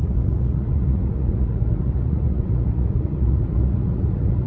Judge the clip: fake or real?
fake